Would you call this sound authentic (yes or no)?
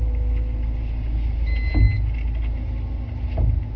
yes